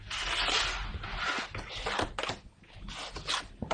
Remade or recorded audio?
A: recorded